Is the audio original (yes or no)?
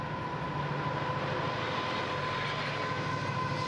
yes